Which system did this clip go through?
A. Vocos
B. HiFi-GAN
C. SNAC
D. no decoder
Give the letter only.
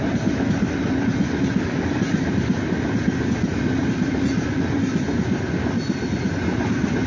D